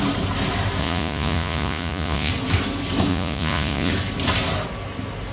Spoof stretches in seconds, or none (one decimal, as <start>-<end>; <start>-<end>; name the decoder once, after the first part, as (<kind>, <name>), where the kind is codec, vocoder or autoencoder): 0.8-2.3 (vocoder, Vocos); 3.1-3.9